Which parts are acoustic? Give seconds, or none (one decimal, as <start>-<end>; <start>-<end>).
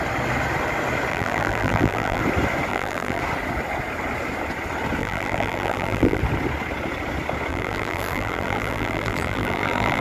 0.0-1.1; 2.2-2.7; 3.2-5.0; 6.2-7.5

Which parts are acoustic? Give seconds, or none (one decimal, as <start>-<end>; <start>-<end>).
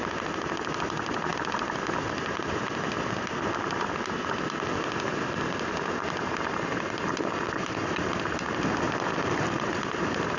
0.0-10.4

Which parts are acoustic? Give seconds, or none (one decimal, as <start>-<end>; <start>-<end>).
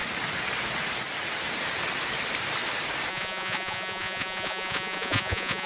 0.0-3.1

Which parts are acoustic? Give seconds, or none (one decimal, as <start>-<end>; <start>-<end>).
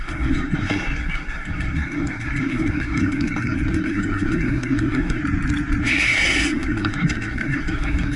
5.2-5.8